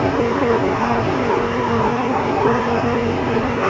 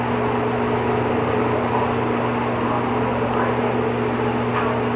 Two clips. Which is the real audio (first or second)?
second